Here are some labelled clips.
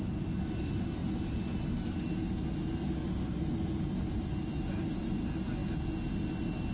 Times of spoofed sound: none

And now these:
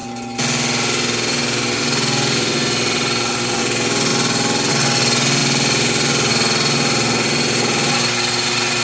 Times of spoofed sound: none